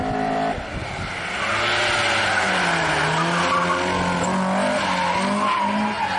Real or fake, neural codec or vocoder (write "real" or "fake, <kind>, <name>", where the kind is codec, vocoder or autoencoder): real